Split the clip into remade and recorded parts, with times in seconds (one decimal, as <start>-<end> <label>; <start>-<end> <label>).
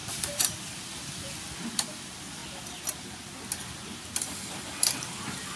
0.0-2.4 remade; 2.4-3.0 recorded; 3.0-5.6 remade